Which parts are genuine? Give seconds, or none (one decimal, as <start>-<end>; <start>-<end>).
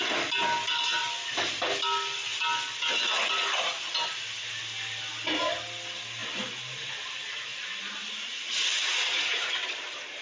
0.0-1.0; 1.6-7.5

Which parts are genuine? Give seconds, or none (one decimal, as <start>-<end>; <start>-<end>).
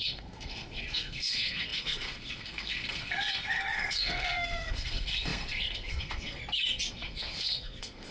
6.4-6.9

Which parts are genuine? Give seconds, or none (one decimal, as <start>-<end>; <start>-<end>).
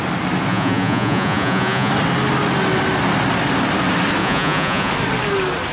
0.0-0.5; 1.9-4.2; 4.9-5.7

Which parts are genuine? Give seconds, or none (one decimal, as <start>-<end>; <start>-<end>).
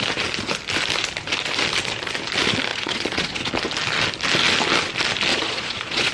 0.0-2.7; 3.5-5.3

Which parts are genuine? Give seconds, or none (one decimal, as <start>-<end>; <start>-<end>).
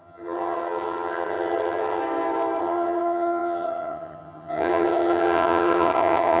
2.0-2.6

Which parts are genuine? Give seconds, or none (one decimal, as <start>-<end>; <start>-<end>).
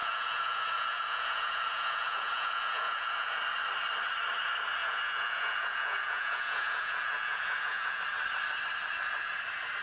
3.4-4.8; 8.0-9.8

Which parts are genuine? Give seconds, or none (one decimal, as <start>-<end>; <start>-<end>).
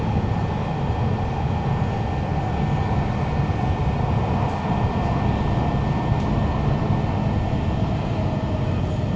0.0-9.2